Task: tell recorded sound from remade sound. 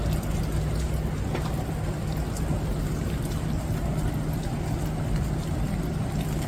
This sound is recorded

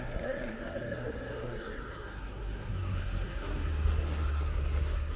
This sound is remade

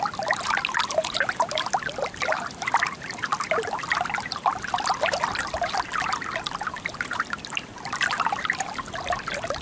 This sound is recorded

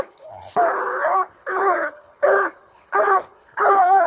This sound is remade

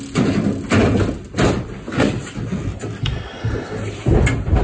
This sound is recorded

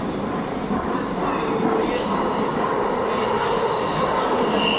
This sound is recorded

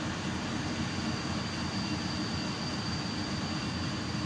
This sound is recorded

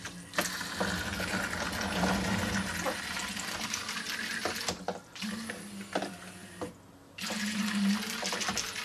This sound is recorded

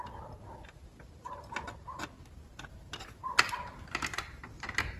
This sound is recorded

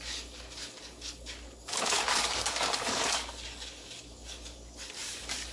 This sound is remade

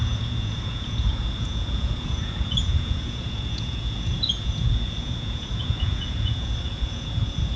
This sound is remade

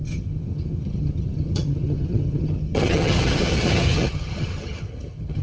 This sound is remade